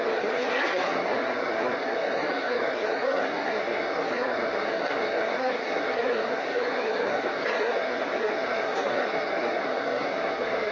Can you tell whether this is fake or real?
fake